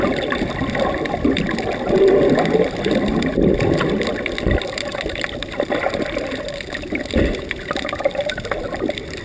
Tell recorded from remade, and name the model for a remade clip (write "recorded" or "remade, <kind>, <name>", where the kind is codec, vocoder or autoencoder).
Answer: recorded